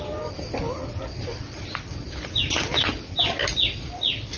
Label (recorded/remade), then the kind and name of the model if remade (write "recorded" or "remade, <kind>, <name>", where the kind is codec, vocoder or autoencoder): recorded